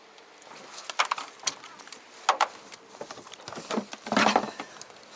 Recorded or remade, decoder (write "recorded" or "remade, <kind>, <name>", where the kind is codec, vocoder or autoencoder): recorded